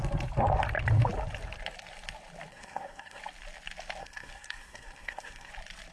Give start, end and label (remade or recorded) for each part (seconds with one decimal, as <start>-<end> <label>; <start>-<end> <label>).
0.0-2.5 recorded; 2.5-3.2 remade; 3.2-4.0 recorded; 4.0-5.5 remade; 5.5-5.9 recorded